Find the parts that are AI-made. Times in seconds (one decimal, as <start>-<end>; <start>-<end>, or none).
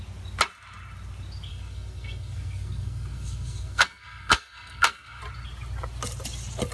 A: 1.5-5.2